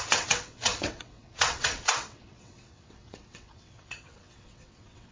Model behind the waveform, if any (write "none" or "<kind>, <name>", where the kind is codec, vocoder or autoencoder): vocoder, WaveNeXt